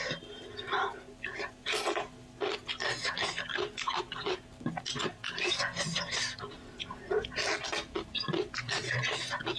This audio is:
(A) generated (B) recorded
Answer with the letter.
B